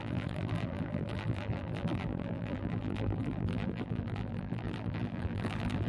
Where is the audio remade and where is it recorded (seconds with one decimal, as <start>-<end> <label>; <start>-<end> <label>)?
0.0-5.9 remade